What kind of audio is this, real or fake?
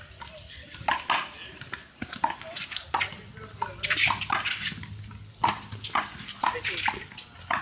real